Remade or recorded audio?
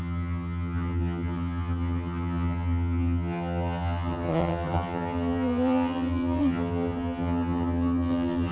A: remade